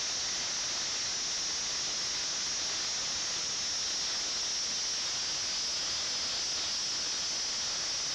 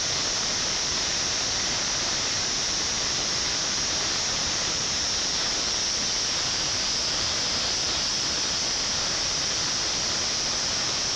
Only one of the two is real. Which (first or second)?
first